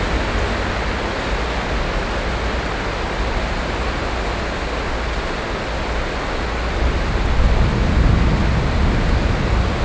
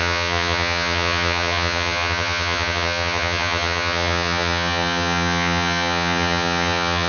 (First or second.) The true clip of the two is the first